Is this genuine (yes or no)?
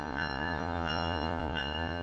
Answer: no